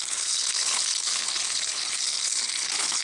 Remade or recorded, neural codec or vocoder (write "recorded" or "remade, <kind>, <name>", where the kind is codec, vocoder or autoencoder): remade, codec, HILCodec